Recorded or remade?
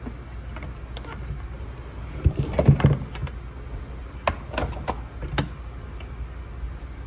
recorded